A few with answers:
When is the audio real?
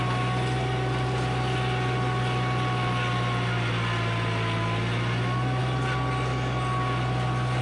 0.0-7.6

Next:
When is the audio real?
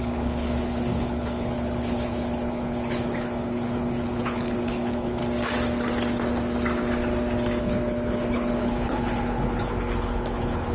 5.2-7.6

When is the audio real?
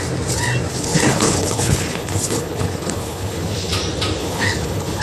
0.0-0.7; 3.7-4.2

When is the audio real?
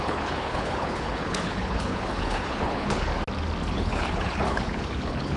3.1-3.7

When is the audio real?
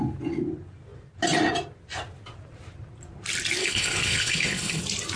0.0-3.6; 4.8-5.2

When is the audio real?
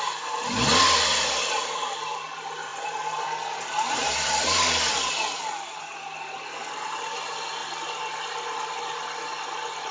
0.0-9.9